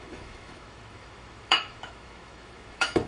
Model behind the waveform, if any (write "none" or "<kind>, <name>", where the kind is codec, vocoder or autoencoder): autoencoder, DAC-VAE